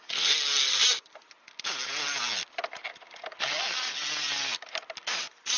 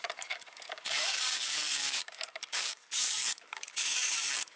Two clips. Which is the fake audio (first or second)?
second